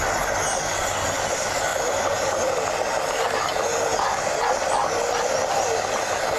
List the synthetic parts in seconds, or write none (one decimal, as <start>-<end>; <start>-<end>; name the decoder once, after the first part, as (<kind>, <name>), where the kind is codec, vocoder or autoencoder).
none